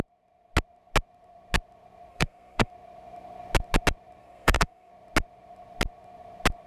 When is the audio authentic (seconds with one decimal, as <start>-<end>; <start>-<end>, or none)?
0.0-2.1; 2.7-4.2; 4.9-6.7